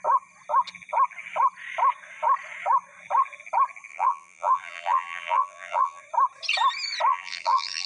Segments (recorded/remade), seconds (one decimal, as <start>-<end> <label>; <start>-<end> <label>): 0.0-3.9 recorded; 3.9-6.0 remade; 6.0-7.1 recorded; 7.1-7.9 remade